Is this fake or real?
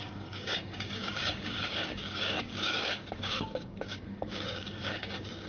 fake